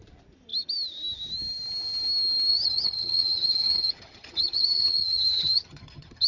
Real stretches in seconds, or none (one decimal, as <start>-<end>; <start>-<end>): 0.0-2.5